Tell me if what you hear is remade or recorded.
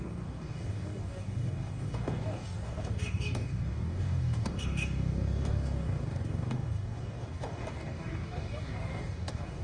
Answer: remade